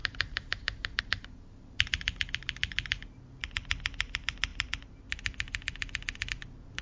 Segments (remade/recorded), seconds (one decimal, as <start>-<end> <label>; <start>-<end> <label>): 0.0-1.0 remade; 1.0-6.8 recorded